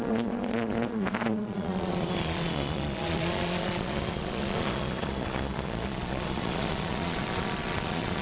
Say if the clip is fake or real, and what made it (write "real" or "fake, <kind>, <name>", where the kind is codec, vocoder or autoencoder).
fake, vocoder, Vocos